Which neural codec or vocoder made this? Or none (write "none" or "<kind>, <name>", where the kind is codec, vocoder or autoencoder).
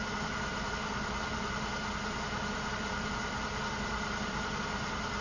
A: none